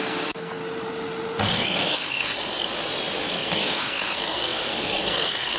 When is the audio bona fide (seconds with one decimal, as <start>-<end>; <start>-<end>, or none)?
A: 0.6-1.4; 2.3-3.3